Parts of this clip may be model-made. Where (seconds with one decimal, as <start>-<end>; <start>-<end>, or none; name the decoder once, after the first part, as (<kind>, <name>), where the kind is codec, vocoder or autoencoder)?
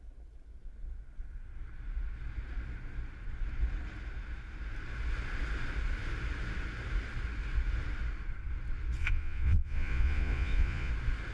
9.0-10.9 (vocoder, Vocos)